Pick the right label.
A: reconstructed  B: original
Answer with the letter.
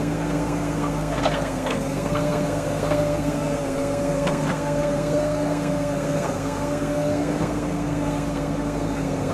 A